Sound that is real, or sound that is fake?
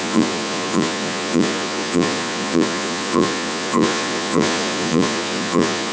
fake